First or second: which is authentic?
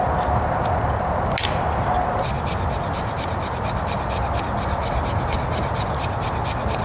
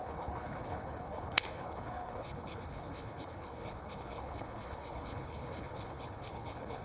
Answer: first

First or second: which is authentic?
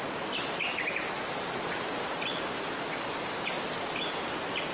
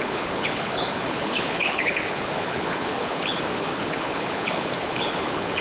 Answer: first